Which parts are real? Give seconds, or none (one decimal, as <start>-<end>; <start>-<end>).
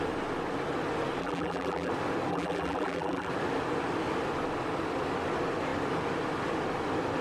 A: 0.0-1.2; 1.9-2.3; 3.3-7.2